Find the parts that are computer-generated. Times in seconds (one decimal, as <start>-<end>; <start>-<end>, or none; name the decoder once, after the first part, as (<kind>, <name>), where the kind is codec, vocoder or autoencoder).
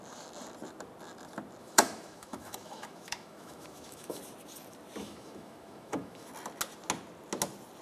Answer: 1.6-4.2 (autoencoder, DAC-VAE); 5.0-6.3